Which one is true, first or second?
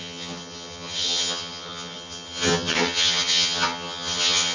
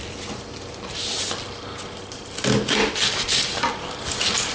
second